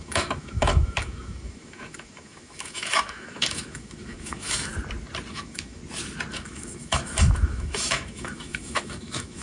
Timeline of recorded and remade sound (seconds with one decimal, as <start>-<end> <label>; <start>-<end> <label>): 0.0-4.7 remade; 4.7-5.3 recorded; 5.3-5.8 remade; 5.8-6.3 recorded; 6.3-9.4 remade